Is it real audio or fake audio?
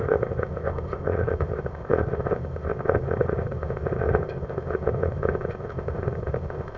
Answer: fake